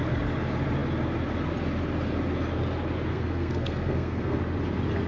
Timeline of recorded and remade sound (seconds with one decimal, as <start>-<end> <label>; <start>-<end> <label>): 0.0-3.1 recorded; 3.1-4.4 remade; 4.4-5.1 recorded